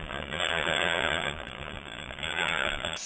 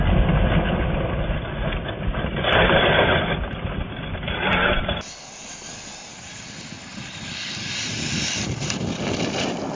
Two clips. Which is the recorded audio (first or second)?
second